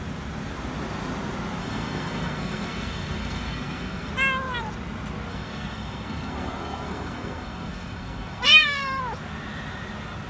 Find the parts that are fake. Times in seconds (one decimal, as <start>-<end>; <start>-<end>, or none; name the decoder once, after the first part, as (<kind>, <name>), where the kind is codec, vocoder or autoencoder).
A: 1.6-4.1 (codec, SNAC); 5.3-9.0